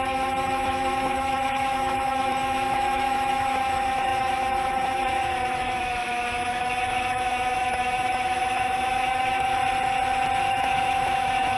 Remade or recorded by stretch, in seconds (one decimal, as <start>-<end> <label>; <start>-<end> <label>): 0.0-9.6 remade; 9.6-10.5 recorded; 10.5-11.6 remade